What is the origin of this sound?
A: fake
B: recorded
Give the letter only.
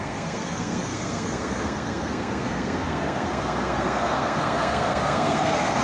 A